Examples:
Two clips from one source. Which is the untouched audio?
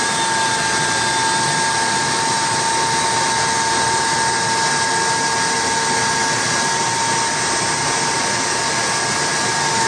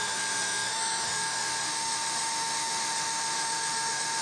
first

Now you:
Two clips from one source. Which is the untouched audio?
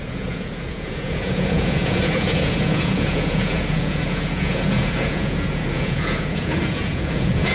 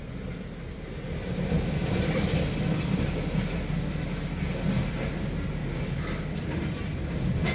second